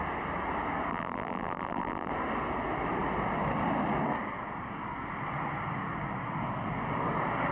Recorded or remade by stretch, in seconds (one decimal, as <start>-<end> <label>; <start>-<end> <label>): 0.0-0.9 recorded; 0.9-2.1 remade; 2.1-7.5 recorded